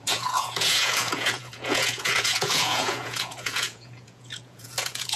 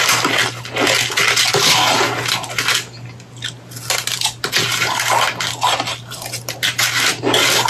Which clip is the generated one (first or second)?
first